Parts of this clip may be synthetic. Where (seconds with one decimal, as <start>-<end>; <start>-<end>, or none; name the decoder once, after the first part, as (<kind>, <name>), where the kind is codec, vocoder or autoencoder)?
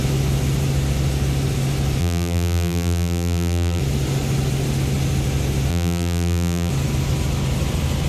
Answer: 2.0-3.8 (vocoder, BigVGAN v2); 5.7-6.7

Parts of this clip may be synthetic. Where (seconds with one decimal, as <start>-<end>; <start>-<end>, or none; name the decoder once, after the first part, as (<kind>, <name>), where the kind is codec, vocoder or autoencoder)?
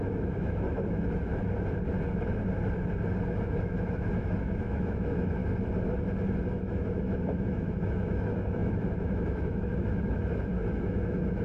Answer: 0.0-1.3 (autoencoder, DAC-VAE); 3.4-5.4; 6.5-11.4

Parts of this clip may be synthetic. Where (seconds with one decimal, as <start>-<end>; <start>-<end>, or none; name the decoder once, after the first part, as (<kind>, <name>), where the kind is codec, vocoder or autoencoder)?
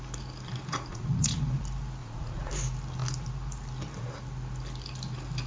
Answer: 0.9-1.4 (vocoder, Vocos); 2.0-2.5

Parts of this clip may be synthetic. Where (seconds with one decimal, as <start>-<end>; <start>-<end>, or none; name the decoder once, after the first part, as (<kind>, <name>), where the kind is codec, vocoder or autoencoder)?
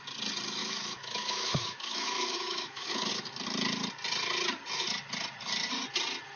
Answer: 0.6-3.1 (autoencoder, DAC-VAE)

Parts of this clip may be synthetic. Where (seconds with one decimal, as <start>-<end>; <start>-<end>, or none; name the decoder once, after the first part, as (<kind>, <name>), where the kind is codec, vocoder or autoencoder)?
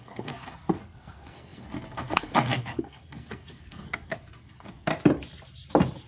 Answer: 0.0-4.9 (codec, SNAC)